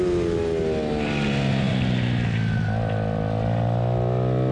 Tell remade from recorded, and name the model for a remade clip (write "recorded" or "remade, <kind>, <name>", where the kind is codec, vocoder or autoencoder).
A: recorded